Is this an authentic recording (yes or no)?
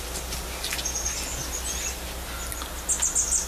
yes